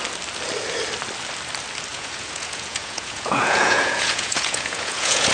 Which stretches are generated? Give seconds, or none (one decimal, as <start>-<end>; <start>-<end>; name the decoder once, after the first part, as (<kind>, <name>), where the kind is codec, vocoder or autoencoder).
1.9-5.3 (vocoder, Vocos)